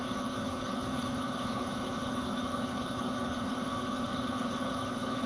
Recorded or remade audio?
remade